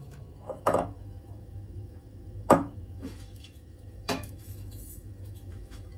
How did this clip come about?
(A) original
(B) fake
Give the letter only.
B